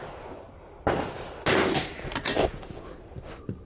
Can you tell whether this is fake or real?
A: fake